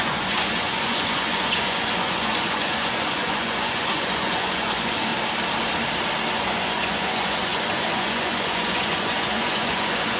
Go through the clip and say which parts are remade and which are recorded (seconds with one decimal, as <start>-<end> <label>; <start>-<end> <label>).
0.0-5.1 remade; 5.1-6.3 recorded; 6.3-10.2 remade